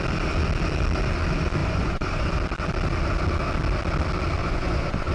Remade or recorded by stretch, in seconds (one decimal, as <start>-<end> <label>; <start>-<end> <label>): 0.0-1.6 recorded; 1.6-2.3 remade; 2.3-4.4 recorded; 4.4-5.1 remade